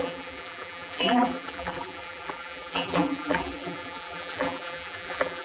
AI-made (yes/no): yes